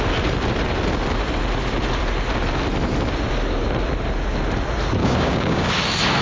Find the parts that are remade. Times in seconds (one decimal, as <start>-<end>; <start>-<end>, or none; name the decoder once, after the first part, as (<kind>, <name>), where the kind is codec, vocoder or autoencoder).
5.0-5.7 (codec, DAC)